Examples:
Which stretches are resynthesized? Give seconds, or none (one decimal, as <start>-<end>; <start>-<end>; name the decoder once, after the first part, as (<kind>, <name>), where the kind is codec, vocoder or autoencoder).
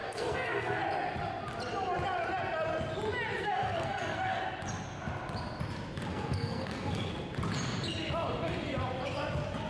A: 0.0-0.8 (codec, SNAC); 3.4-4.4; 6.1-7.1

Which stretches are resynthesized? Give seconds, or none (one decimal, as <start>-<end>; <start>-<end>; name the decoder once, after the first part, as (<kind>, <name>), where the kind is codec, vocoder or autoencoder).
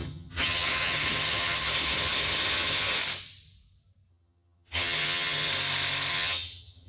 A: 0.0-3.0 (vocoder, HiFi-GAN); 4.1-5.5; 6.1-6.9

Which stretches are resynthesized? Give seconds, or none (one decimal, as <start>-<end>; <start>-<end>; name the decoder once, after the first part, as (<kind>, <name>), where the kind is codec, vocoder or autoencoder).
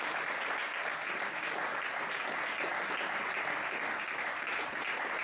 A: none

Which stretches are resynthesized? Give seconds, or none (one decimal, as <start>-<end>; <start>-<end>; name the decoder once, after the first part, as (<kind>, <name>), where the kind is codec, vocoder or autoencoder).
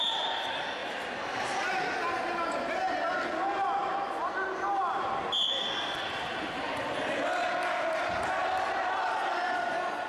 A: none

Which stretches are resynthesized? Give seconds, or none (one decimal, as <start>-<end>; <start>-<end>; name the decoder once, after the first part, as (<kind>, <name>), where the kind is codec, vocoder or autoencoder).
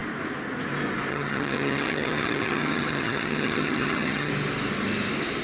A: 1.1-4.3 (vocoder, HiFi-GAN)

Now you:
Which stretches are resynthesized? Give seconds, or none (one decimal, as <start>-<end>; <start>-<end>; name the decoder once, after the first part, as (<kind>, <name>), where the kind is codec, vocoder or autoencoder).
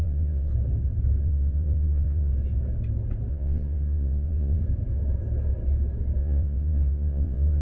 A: 0.0-0.5 (vocoder, WaveNeXt); 1.2-2.3; 3.3-4.6; 6.2-7.6